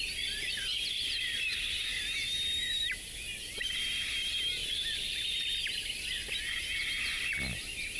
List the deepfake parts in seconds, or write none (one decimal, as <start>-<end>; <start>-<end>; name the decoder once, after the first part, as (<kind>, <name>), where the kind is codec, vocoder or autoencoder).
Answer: 4.6-5.7 (vocoder, BigVGAN v2)